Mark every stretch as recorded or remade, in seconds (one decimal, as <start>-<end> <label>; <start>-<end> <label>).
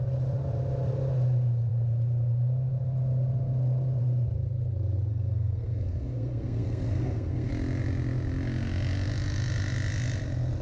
0.0-5.1 recorded; 5.1-7.5 remade; 7.5-10.6 recorded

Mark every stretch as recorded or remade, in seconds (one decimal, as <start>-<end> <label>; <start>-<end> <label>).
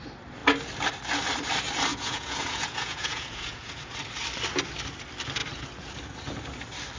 0.0-1.9 recorded; 1.9-3.9 remade; 3.9-7.0 recorded